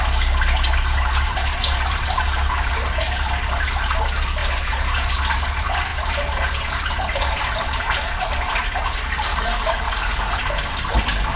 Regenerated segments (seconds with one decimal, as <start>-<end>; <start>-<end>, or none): 9.3-10.3

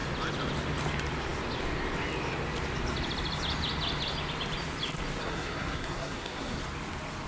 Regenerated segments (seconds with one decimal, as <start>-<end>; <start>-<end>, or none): 5.2-6.6

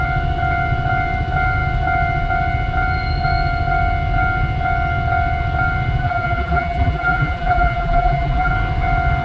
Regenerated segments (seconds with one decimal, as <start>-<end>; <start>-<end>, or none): 6.0-8.5

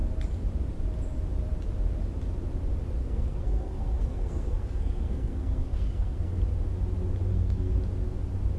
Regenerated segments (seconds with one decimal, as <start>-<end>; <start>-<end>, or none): 3.0-6.4; 7.3-7.8

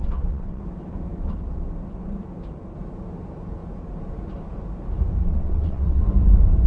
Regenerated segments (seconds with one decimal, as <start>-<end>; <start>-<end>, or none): 0.0-0.6; 5.2-6.0